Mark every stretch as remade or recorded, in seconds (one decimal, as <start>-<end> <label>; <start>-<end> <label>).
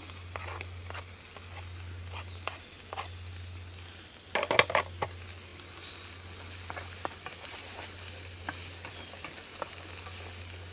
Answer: 0.0-10.7 recorded